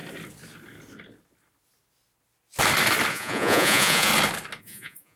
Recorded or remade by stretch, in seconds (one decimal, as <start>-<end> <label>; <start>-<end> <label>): 0.0-3.1 recorded; 3.1-4.1 remade; 4.1-4.6 recorded; 4.6-5.2 remade

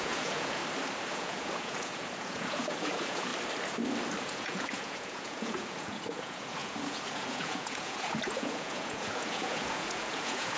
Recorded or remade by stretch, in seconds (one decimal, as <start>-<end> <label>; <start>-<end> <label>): 0.0-0.6 remade; 0.6-1.1 recorded; 1.1-3.3 remade; 3.3-4.2 recorded; 4.2-10.6 remade

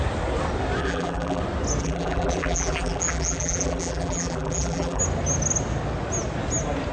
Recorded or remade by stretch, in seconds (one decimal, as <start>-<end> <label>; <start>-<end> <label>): 0.0-0.8 recorded; 0.8-1.4 remade; 1.4-1.8 recorded; 1.8-5.0 remade; 5.0-6.9 recorded